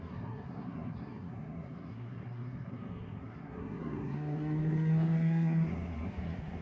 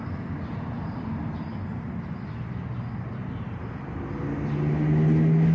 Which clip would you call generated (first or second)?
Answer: first